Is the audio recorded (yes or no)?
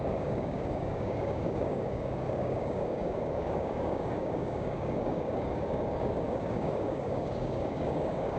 no